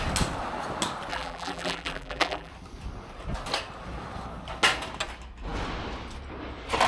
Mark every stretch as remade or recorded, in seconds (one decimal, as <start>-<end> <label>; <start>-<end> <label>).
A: 0.0-1.1 recorded; 1.1-2.5 remade; 2.5-6.9 recorded